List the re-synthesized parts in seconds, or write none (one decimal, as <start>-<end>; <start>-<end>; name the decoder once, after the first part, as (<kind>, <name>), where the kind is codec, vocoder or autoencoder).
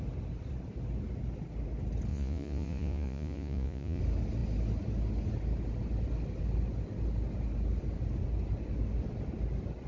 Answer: 2.1-4.0 (vocoder, Vocos)